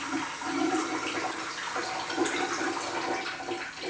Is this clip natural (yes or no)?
yes